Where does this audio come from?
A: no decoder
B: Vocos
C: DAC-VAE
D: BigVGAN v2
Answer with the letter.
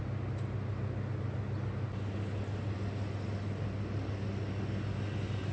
A